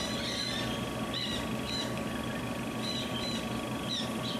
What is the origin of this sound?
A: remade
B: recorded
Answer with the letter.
B